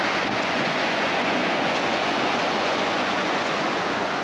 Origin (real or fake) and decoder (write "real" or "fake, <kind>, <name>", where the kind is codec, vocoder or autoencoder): fake, vocoder, Vocos